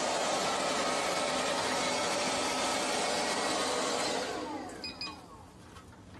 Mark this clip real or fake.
real